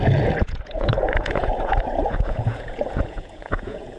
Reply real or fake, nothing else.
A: fake